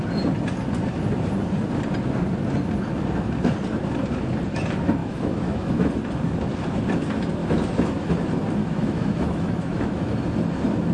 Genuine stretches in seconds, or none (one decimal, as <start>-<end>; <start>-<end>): 0.0-5.0; 5.9-7.4; 8.1-8.6; 10.1-10.9